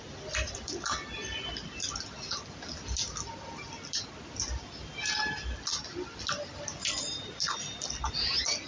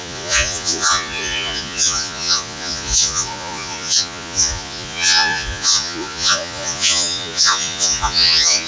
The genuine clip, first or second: first